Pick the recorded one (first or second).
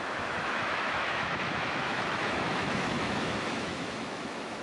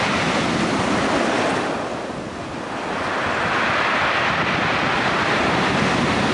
second